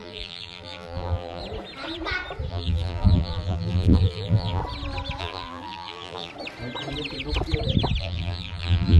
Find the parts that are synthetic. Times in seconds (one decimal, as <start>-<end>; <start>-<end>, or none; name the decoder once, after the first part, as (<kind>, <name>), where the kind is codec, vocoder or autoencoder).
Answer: 0.0-1.4 (vocoder, BigVGAN v2); 2.5-4.6; 5.2-6.3; 8.0-9.0